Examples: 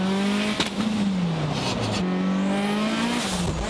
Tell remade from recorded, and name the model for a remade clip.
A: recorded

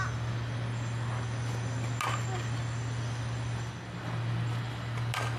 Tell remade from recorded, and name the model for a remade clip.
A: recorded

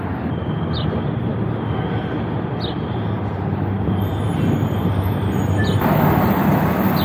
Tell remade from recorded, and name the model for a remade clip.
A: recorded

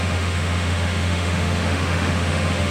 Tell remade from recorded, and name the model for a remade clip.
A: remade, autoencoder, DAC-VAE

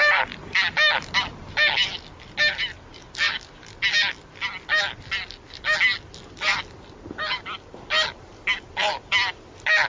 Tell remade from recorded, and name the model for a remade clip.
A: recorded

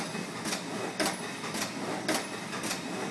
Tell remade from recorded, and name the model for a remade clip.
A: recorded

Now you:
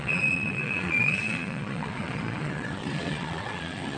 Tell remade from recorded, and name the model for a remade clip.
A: remade, vocoder, Vocos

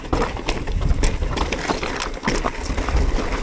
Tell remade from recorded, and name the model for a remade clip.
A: recorded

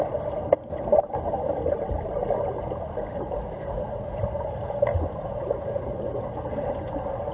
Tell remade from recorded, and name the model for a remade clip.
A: recorded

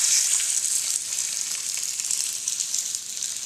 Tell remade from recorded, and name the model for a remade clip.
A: recorded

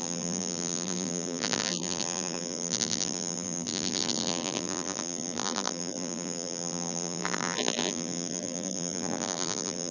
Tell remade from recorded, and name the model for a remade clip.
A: remade, vocoder, BigVGAN v2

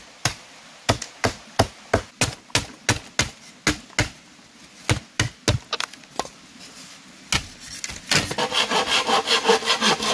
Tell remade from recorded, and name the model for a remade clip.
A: recorded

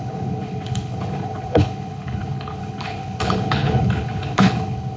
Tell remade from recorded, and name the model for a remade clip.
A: remade, codec, HILCodec